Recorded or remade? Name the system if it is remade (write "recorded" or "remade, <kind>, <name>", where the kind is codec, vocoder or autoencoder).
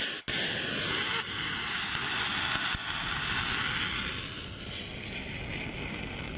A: recorded